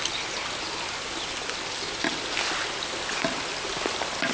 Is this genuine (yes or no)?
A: yes